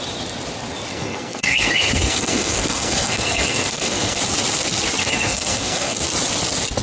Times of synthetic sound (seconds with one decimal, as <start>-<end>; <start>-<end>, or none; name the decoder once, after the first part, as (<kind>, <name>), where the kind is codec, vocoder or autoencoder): 0.9-4.2 (codec, SNAC); 5.0-6.0